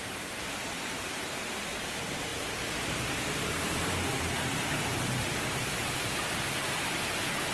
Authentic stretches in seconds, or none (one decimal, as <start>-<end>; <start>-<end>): 4.9-5.6